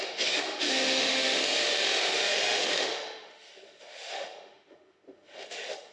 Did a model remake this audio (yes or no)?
yes